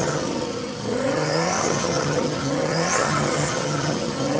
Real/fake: fake